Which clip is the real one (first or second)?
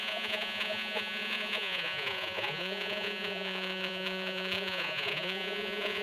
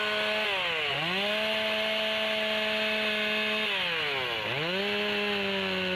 second